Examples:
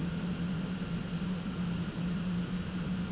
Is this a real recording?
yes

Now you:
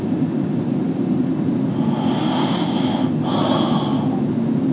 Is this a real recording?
yes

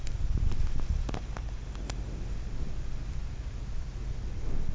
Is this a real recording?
yes